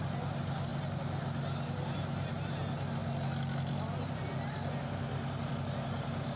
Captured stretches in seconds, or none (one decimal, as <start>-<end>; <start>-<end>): 0.0-6.4